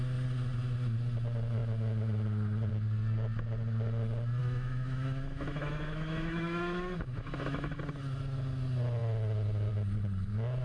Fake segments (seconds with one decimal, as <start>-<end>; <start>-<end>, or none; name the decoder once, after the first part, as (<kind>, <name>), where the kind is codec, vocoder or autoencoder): 4.4-7.8 (autoencoder, DAC-VAE)